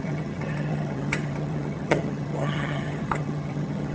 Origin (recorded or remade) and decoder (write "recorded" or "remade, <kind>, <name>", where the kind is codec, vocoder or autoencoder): remade, vocoder, HiFi-GAN